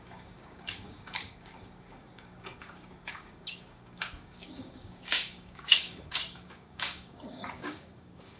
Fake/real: fake